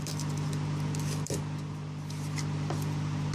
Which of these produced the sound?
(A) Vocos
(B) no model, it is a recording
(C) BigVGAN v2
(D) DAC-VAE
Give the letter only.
C